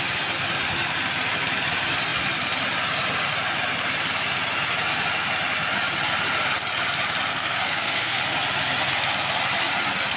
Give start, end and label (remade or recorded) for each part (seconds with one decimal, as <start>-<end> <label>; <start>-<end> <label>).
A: 0.0-7.3 recorded; 7.3-8.2 remade; 8.2-10.2 recorded